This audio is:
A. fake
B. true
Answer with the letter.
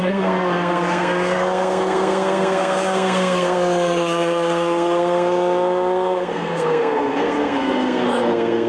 A